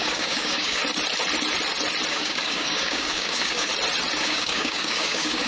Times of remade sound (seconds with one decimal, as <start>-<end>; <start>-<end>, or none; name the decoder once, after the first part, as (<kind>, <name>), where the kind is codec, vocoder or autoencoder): 0.0-0.8 (codec, DAC); 2.1-3.7; 4.2-5.5